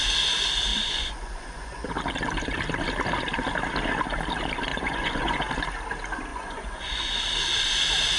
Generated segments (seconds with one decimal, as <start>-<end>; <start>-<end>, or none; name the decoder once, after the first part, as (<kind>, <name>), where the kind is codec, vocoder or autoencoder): 0.7-1.9 (vocoder, Vocos); 4.7-5.5; 6.3-7.1